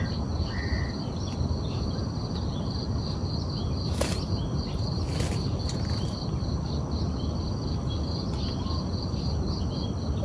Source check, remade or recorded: recorded